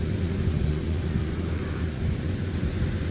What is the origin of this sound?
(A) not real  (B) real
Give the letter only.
A